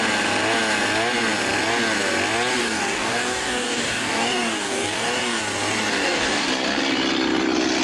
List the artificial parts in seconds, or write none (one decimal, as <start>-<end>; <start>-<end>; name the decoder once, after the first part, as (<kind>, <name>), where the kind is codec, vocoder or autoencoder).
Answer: 2.6-5.4 (codec, DAC); 5.9-6.5